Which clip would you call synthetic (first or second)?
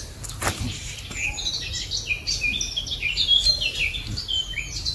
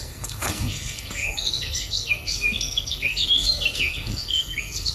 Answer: second